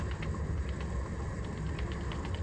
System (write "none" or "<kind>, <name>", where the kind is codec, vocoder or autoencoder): none